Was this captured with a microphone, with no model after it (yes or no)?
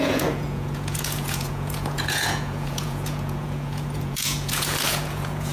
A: no